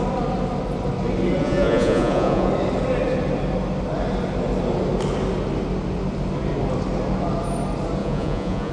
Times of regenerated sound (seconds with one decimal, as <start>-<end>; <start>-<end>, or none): 1.4-2.5; 8.0-8.7